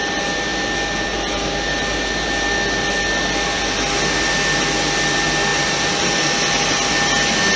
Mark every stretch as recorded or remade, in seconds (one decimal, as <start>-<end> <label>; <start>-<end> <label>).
0.0-7.6 recorded